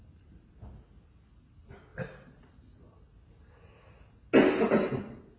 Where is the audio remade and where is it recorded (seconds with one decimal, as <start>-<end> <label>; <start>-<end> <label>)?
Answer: 0.0-5.4 recorded